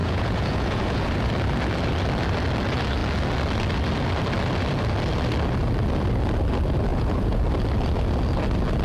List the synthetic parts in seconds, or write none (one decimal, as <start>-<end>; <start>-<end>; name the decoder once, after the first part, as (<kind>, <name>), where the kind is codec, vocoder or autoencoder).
0.0-1.3 (vocoder, Vocos); 6.9-7.4